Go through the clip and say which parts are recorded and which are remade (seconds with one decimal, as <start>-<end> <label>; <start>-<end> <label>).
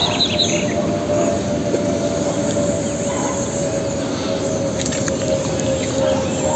0.0-6.6 recorded